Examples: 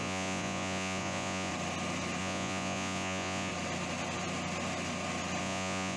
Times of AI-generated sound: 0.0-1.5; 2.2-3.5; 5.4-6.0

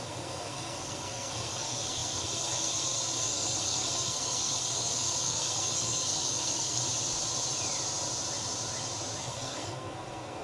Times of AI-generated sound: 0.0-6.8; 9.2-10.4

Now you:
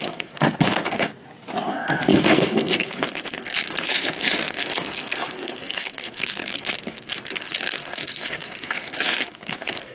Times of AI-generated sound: 0.0-1.1; 1.7-9.9